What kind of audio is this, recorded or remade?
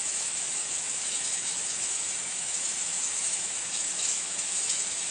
remade